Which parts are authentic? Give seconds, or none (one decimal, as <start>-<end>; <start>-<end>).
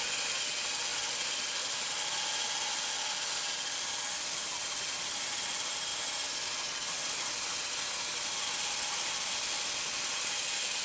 5.9-8.6